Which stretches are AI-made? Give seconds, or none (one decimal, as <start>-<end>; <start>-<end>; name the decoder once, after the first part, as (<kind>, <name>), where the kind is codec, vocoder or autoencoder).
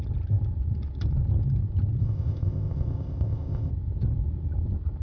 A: 2.0-3.7 (codec, ZipCodec)